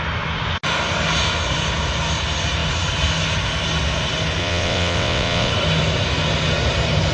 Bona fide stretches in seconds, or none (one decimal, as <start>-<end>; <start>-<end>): 0.0-4.4; 5.5-7.1